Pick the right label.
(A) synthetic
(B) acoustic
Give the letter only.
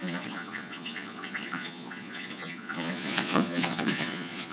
A